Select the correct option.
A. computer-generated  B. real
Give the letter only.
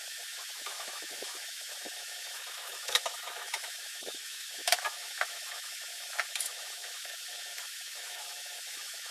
A